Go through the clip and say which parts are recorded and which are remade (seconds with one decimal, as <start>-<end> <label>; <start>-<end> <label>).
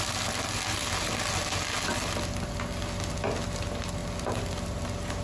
0.0-5.2 recorded